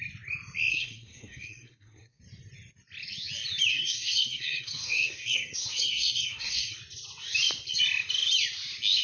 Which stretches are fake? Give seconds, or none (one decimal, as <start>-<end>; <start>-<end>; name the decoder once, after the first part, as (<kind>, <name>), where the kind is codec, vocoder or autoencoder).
0.7-2.2 (codec, SNAC); 3.7-6.8